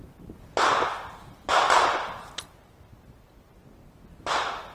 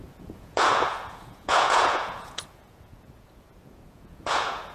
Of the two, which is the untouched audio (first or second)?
first